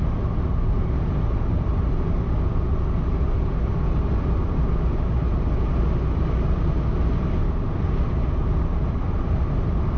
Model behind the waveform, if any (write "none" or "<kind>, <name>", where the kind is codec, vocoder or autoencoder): none